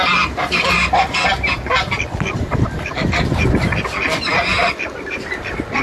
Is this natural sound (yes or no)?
no